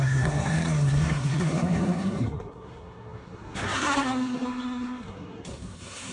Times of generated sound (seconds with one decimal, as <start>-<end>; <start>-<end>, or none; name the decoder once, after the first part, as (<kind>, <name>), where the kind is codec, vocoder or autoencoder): 0.0-6.1 (codec, SNAC)